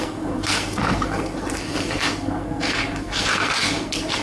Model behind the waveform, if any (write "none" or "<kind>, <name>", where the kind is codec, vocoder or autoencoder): codec, SNAC